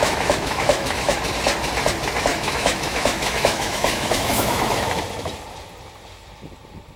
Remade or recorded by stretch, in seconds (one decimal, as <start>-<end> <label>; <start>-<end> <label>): 0.0-1.2 remade; 1.2-2.3 recorded; 2.3-5.0 remade; 5.0-7.0 recorded